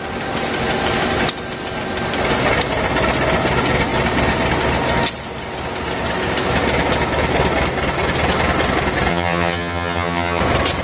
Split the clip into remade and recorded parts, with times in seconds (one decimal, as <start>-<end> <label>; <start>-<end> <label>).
0.0-9.1 recorded; 9.1-10.4 remade; 10.4-10.8 recorded